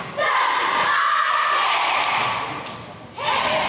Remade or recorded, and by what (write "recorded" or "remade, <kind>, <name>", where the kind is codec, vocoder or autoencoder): recorded